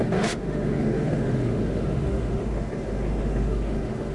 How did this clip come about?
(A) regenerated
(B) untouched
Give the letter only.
A